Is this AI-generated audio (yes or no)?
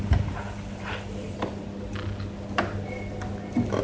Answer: no